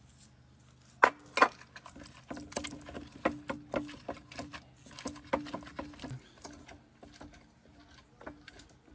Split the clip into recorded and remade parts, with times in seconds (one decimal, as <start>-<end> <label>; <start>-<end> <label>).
0.0-8.9 recorded